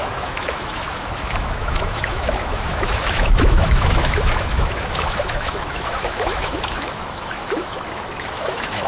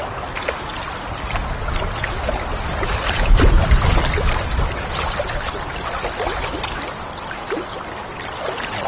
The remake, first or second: first